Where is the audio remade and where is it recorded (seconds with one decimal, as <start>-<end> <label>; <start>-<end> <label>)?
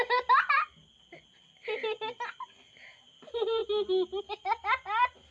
0.0-5.3 recorded